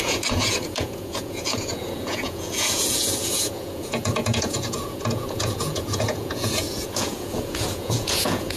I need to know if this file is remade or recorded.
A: remade